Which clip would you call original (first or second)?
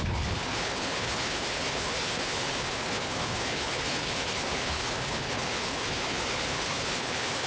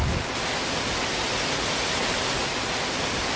second